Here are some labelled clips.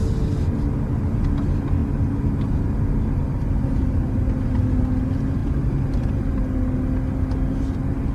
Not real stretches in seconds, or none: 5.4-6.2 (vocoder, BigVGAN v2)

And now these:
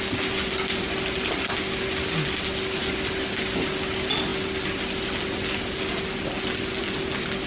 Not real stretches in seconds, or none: none

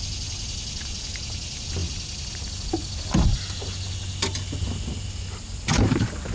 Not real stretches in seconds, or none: none

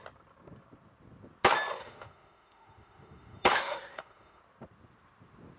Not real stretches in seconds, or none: 1.8-4.4 (autoencoder, DAC-VAE)

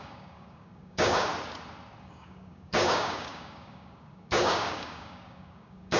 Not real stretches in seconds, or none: 0.0-1.3 (codec, DAC); 2.0-6.0

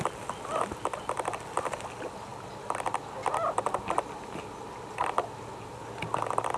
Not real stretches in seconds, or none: none

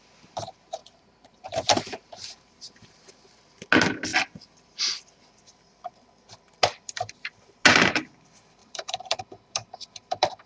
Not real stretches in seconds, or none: 0.8-3.1 (vocoder, BigVGAN v2); 8.6-9.2